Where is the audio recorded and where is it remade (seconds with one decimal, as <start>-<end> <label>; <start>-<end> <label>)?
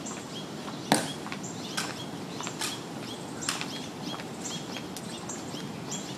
0.0-6.2 recorded